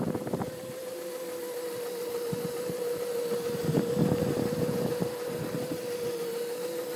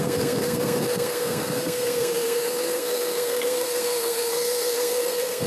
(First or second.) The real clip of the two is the first